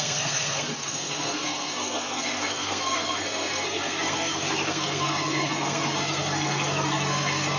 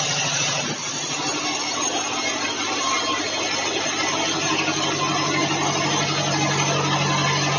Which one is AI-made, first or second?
first